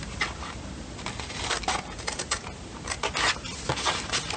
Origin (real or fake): real